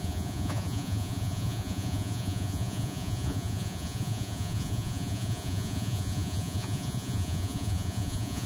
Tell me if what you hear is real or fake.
fake